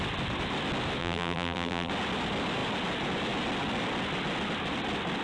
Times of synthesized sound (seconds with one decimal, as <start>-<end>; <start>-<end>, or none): 1.0-1.9